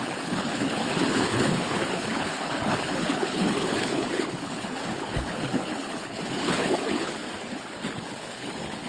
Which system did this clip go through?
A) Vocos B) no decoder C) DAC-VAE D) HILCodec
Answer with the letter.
D